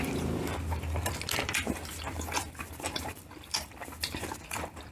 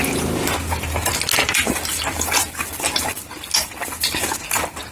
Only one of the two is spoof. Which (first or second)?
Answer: first